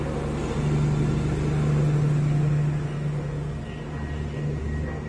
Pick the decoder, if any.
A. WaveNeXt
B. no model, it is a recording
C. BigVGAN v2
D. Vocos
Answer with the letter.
B